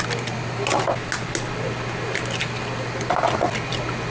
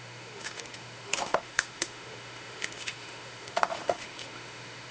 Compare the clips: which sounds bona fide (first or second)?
first